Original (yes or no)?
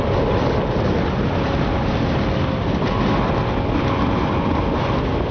yes